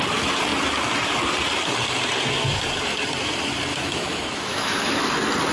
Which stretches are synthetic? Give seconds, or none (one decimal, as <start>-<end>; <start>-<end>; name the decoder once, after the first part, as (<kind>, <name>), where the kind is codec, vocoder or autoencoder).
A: 3.7-5.0 (autoencoder, DAC-VAE)